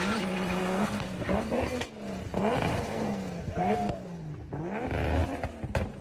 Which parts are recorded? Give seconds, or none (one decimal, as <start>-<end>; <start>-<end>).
0.0-0.6; 1.9-2.7; 4.2-6.0